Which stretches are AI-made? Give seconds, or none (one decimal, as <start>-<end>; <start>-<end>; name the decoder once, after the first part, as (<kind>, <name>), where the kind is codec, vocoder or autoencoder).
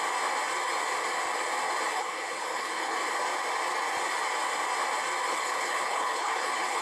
1.9-3.0 (codec, HILCodec); 5.3-6.8